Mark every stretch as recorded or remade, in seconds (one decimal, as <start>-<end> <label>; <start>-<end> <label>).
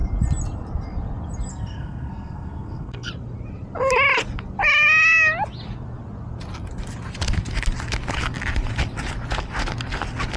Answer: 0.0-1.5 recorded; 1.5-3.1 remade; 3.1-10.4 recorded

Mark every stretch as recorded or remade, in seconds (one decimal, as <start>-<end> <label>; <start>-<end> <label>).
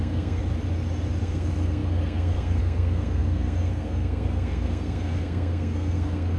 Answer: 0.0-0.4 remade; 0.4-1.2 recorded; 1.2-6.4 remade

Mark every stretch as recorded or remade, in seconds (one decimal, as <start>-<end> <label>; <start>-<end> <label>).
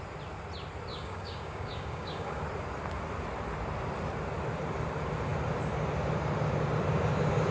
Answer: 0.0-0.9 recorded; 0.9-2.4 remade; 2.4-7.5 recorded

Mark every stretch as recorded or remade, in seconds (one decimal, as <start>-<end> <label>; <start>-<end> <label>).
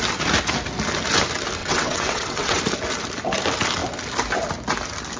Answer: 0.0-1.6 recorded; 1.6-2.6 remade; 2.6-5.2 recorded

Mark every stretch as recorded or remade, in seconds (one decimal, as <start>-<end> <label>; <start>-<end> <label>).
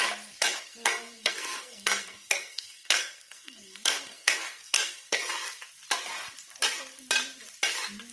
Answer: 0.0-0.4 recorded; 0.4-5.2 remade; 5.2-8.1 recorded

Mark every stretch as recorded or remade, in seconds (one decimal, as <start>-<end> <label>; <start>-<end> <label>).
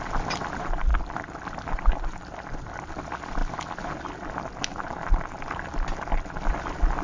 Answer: 0.0-7.0 recorded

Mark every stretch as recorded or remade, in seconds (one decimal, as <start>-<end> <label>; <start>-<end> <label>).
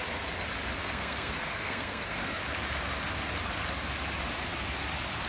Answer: 0.0-0.8 recorded; 0.8-2.4 remade; 2.4-5.3 recorded